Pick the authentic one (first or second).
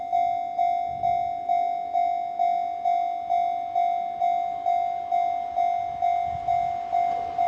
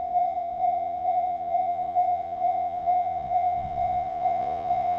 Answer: first